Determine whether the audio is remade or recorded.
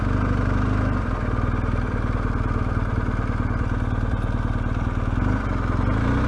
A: recorded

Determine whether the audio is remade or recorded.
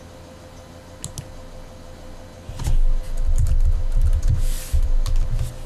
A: recorded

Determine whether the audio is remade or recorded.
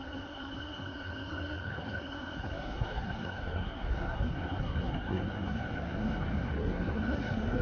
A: remade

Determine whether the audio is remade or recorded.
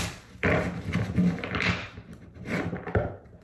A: remade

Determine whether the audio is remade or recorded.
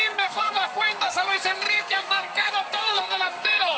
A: remade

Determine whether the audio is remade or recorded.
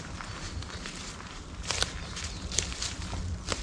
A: recorded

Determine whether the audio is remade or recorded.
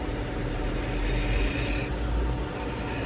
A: recorded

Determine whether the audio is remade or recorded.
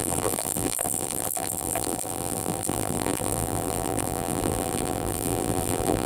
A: remade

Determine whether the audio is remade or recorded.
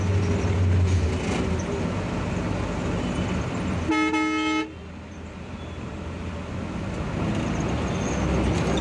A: recorded